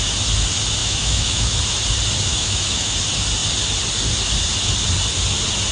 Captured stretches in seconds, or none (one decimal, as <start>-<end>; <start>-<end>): 0.0-0.8; 1.5-2.3; 2.9-5.7